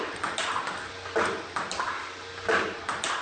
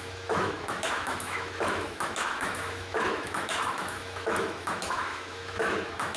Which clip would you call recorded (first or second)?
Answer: first